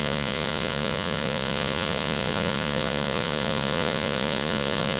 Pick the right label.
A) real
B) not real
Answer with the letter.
B